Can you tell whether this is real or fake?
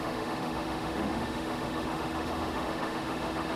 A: fake